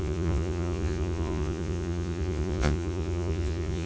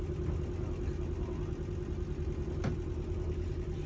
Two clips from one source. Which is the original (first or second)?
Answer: second